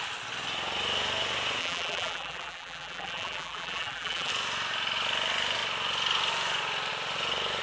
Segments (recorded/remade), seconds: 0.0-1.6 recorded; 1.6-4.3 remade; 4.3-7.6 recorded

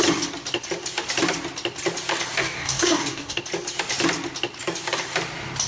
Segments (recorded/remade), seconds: 0.0-2.4 recorded; 2.4-3.4 remade; 3.4-5.7 recorded

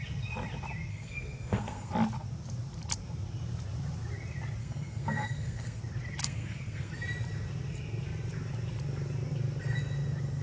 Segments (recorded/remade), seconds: 0.0-0.9 recorded; 0.9-1.9 remade; 1.9-4.6 recorded; 4.6-5.8 remade; 5.8-6.2 recorded; 6.2-6.9 remade; 6.9-10.4 recorded

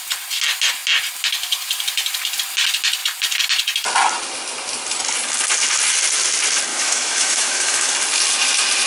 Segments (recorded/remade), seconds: 0.0-6.7 recorded; 6.7-7.9 remade; 7.9-8.9 recorded

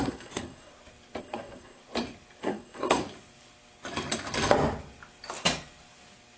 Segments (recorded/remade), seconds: 0.0-0.7 remade; 0.7-1.2 recorded; 1.2-1.8 remade; 1.8-2.4 recorded; 2.4-3.0 remade; 3.0-6.4 recorded

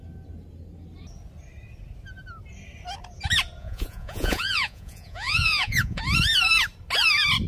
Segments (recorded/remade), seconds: 0.0-3.6 recorded; 3.6-6.0 remade; 6.0-7.5 recorded

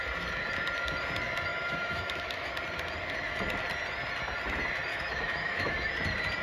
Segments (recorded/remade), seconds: 0.0-1.5 recorded; 1.5-2.5 remade; 2.5-4.9 recorded; 4.9-5.9 remade; 5.9-6.4 recorded